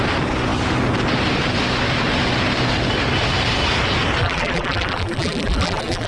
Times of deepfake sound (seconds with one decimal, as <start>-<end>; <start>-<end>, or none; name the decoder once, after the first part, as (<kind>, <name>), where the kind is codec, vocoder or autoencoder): 4.2-6.1 (vocoder, BigVGAN v2)